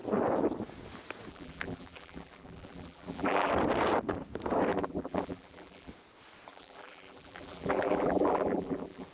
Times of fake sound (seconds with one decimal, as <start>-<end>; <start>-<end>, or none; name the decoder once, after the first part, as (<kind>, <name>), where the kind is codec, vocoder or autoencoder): 1.3-3.5 (vocoder, BigVGAN v2); 4.7-5.9; 6.5-9.1